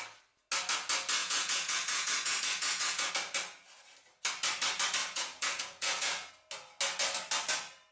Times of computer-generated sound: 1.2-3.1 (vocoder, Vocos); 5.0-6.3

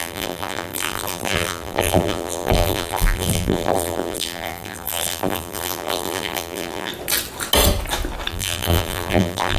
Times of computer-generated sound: 0.0-6.9 (vocoder, BigVGAN v2); 8.3-9.6

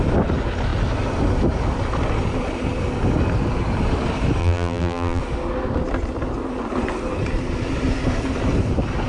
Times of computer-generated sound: 4.4-5.2 (vocoder, BigVGAN v2)

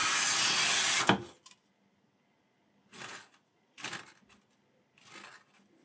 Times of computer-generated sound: 2.9-3.8 (vocoder, Vocos)

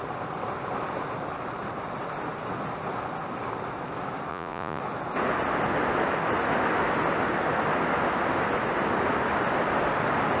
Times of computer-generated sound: 4.3-4.8 (vocoder, Vocos)